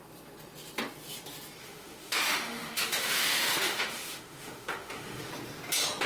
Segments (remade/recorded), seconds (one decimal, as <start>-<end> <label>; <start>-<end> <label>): 0.0-1.6 recorded; 1.6-5.3 remade; 5.3-6.1 recorded